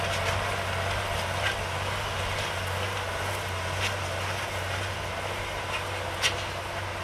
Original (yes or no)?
yes